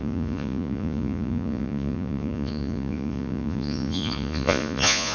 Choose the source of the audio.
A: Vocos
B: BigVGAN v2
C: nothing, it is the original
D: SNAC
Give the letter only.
A